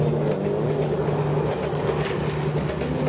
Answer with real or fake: real